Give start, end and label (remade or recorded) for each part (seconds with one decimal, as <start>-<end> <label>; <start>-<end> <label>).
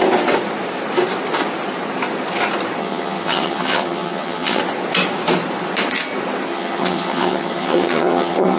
0.0-2.8 recorded; 2.8-4.6 remade; 4.6-6.5 recorded; 6.5-8.6 remade